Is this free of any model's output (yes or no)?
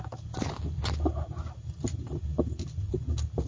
yes